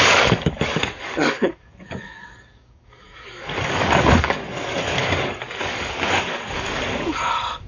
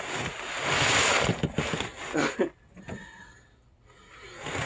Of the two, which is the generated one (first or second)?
first